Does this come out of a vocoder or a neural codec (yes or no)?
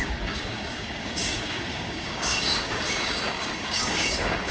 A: yes